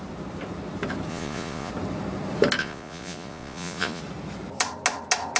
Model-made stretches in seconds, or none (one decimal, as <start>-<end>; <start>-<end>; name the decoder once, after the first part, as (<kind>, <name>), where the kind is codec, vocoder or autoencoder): 1.1-1.7 (vocoder, Vocos); 2.6-4.0